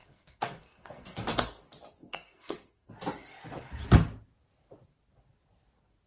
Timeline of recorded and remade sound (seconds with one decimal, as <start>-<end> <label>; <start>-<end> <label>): 0.0-1.6 remade; 1.6-2.0 recorded; 2.0-2.9 remade; 2.9-6.1 recorded